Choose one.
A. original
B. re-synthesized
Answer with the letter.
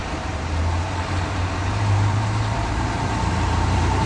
B